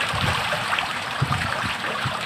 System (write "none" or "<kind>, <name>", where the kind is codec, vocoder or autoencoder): vocoder, BigVGAN v2